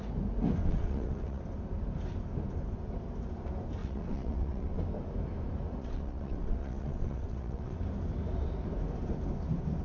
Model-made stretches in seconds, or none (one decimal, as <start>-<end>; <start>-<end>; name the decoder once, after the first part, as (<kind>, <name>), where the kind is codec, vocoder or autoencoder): 0.6-1.4 (vocoder, WaveNeXt); 3.8-4.8; 5.8-7.8